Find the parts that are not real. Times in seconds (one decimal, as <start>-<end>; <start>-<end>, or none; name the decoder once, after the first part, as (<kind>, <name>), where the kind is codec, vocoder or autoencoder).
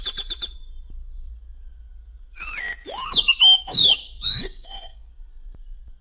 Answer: 3.0-5.1 (codec, DAC)